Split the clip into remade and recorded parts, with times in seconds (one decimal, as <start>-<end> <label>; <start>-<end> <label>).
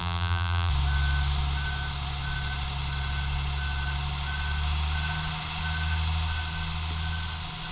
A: 0.0-0.7 remade; 0.7-7.7 recorded